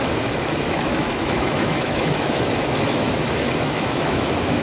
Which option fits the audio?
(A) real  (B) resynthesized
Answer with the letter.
B